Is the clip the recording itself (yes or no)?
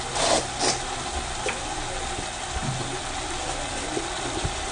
yes